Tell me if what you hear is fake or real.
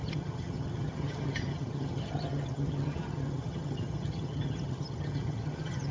fake